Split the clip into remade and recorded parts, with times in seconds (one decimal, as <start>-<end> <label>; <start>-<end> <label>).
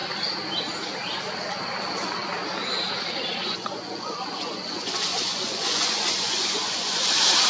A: 0.0-3.5 recorded; 3.5-7.1 remade; 7.1-7.5 recorded